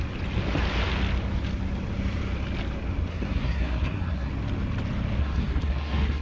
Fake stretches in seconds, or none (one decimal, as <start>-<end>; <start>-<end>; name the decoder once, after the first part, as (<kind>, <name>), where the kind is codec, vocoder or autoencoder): 3.1-4.3 (codec, SNAC); 5.2-6.2